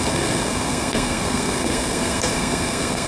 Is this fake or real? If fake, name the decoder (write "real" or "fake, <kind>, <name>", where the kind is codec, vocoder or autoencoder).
fake, codec, SNAC